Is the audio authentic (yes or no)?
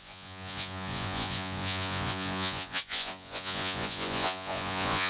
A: no